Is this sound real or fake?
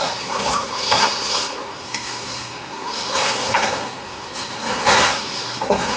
fake